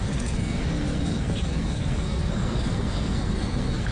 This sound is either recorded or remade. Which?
remade